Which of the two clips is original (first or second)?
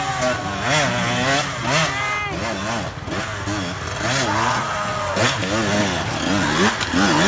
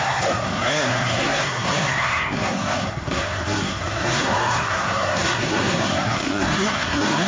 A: first